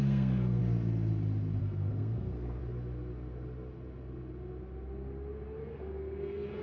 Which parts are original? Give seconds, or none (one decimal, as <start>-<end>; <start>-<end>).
0.6-1.6; 2.6-5.6